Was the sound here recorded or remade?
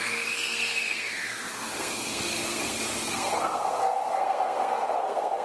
remade